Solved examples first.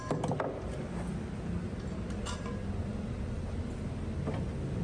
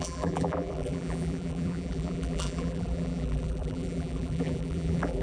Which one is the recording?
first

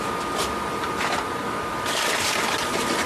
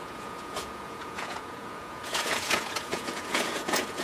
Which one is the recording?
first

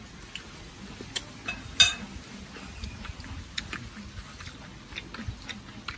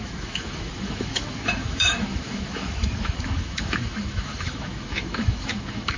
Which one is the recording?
first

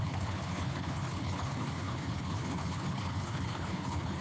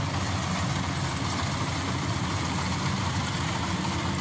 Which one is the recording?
second